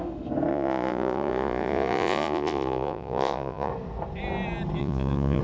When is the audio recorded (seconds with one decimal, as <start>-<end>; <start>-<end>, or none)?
0.0-0.5; 3.7-4.8